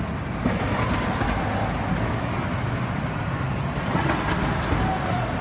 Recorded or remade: recorded